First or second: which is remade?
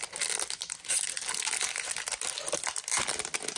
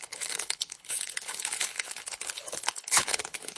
second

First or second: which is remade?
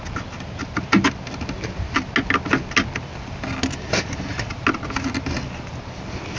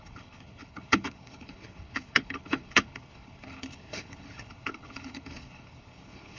second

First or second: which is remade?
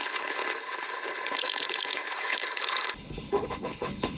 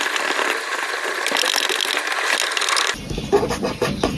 first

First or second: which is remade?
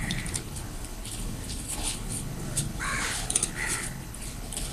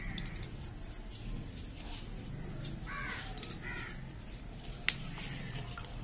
first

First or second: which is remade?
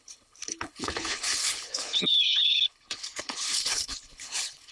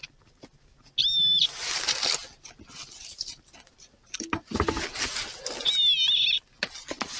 first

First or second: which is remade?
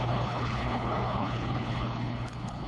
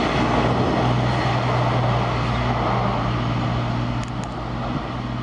first